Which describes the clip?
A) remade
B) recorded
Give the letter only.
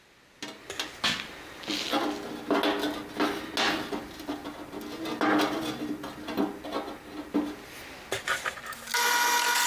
B